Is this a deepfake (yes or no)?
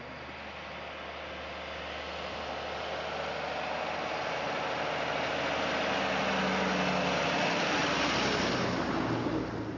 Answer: no